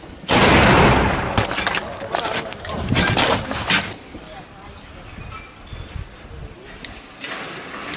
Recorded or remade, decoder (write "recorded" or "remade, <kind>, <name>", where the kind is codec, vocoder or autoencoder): recorded